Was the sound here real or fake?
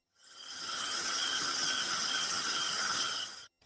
fake